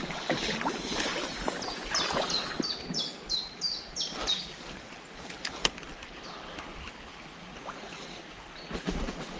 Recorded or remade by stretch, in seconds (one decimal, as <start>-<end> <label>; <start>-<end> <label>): 0.0-7.4 recorded; 7.4-9.4 remade